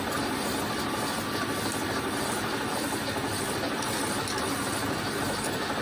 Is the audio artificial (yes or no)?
yes